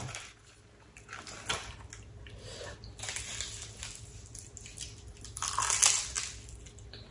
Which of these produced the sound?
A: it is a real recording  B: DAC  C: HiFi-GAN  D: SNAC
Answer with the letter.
A